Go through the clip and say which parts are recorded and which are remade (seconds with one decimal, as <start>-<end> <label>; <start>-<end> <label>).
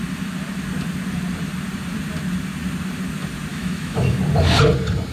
0.0-3.5 recorded; 3.5-4.2 remade; 4.2-5.1 recorded